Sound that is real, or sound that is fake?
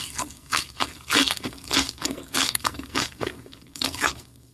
fake